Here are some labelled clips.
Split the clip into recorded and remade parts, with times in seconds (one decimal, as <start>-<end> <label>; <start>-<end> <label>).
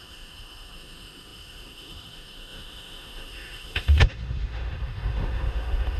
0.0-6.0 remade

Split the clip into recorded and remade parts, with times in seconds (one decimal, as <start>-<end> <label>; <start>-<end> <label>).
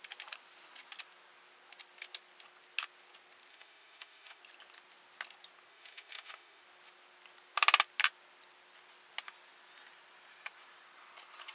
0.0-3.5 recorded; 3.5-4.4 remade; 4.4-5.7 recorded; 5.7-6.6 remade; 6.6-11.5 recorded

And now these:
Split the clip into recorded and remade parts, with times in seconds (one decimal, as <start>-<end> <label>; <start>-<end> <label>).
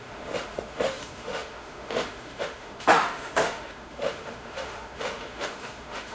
0.0-6.1 remade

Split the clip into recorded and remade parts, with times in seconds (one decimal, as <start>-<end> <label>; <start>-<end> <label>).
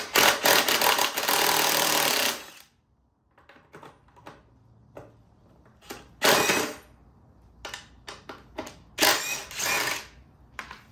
0.0-10.9 recorded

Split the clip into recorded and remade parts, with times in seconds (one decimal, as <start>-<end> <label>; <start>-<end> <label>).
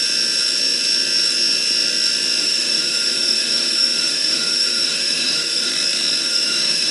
0.0-2.4 recorded; 2.4-5.7 remade; 5.7-6.2 recorded; 6.2-6.9 remade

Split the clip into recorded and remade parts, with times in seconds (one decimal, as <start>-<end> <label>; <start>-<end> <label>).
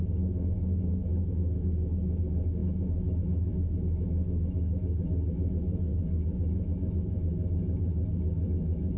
0.0-9.0 remade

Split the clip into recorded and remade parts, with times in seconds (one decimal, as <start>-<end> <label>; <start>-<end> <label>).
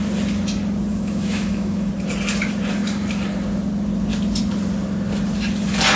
0.0-0.9 recorded; 0.9-1.9 remade; 1.9-6.0 recorded